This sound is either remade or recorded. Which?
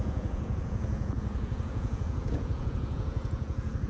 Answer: remade